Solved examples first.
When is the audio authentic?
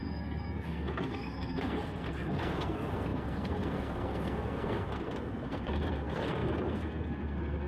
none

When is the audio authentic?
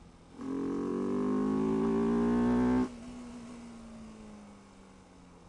0.0-5.5